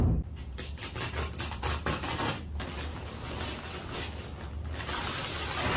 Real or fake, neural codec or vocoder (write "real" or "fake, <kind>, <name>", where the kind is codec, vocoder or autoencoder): real